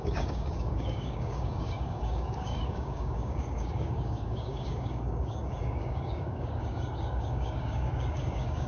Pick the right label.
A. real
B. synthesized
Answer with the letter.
B